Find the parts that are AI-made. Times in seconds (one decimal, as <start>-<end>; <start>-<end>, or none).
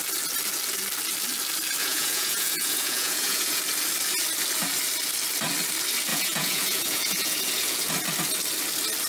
1.8-3.6; 6.1-7.9